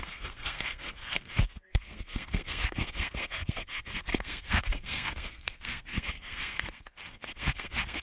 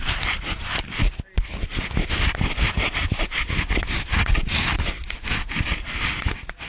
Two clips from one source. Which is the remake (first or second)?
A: first